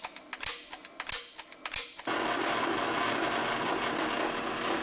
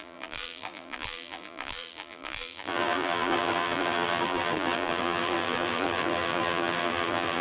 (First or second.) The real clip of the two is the first